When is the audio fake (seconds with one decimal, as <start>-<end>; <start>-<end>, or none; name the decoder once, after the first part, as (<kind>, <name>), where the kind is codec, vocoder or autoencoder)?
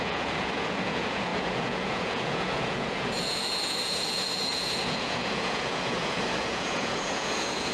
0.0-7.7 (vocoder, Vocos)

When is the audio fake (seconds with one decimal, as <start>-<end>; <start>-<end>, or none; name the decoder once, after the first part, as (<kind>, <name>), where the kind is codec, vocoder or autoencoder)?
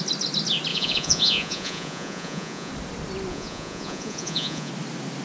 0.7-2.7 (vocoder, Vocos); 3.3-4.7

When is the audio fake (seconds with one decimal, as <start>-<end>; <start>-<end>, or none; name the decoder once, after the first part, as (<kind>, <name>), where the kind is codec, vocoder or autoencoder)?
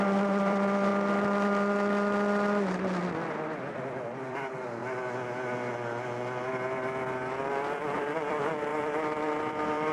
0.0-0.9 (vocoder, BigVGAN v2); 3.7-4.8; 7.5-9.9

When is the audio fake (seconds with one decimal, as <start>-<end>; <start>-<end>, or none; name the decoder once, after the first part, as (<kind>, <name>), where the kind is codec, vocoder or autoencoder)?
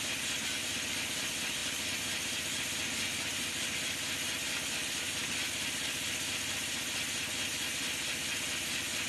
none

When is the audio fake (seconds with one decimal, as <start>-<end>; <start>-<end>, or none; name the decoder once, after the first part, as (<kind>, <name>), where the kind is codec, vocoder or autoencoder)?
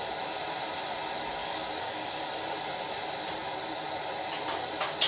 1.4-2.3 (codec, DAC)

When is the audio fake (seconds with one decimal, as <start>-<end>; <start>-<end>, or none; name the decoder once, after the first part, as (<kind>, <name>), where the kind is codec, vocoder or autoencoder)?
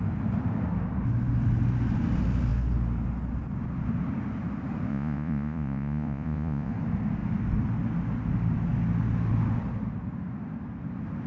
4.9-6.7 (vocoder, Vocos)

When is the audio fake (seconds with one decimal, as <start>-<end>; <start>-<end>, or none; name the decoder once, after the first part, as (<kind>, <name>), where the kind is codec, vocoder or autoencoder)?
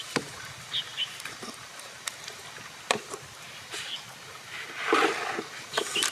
0.9-2.0 (vocoder, BigVGAN v2)